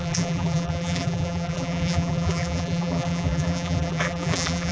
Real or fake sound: fake